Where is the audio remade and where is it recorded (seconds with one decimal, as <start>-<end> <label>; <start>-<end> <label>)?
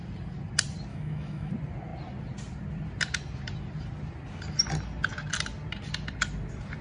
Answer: 0.0-0.9 recorded; 0.9-1.5 remade; 1.5-6.8 recorded